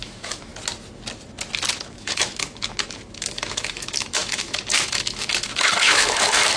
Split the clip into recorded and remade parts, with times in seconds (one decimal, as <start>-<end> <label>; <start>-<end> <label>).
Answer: 0.0-0.5 remade; 0.5-1.7 recorded; 1.7-6.6 remade